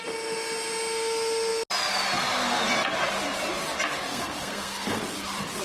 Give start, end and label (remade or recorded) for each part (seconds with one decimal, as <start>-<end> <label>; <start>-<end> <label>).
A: 0.0-4.1 recorded; 4.1-5.0 remade; 5.0-5.6 recorded